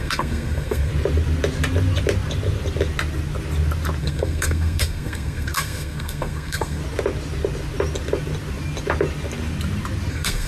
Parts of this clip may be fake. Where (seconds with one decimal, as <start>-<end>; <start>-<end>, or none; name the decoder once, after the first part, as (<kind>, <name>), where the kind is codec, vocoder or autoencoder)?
0.0-0.9 (codec, SNAC); 4.0-6.8; 10.1-10.5